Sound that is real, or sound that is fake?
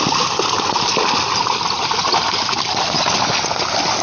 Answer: real